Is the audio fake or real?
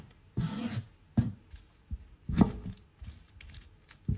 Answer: real